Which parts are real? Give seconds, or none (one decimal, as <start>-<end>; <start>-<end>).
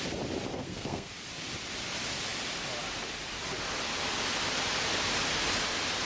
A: 0.0-0.5; 1.1-6.0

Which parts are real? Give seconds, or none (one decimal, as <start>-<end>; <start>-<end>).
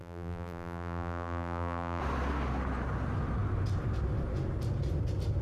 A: 2.0-5.4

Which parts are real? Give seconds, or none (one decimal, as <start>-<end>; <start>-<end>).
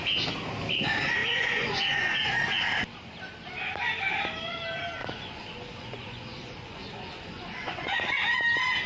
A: 0.0-1.2; 2.4-5.0; 8.0-8.9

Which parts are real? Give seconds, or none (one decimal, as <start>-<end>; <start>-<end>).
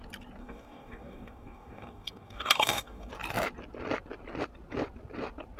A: 0.0-0.4; 3.1-5.6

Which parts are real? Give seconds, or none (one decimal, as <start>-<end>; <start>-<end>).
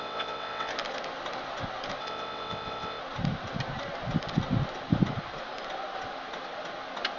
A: 0.7-2.0; 3.0-7.2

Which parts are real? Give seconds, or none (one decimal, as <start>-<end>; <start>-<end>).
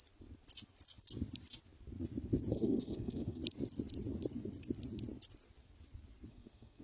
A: 0.0-2.5; 3.4-6.3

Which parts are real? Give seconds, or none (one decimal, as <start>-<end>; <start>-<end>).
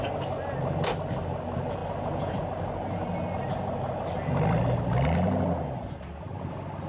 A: 0.0-6.9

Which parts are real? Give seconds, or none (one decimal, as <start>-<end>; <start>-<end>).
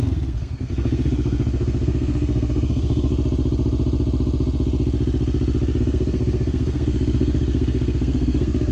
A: 3.1-5.8